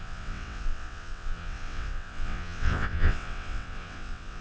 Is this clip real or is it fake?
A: fake